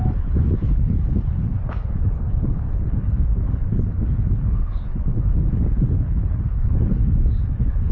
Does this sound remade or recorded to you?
remade